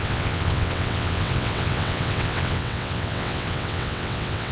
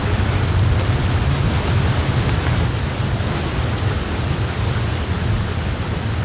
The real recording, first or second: second